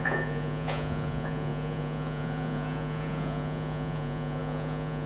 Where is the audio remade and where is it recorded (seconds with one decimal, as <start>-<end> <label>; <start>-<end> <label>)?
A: 0.0-5.1 remade